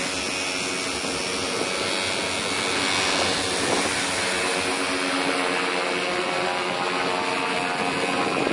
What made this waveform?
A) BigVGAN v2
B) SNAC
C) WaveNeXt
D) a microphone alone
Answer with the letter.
D